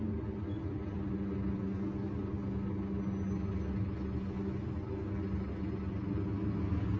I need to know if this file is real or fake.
real